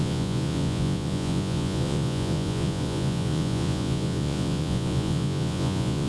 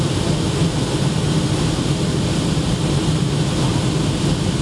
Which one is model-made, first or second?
first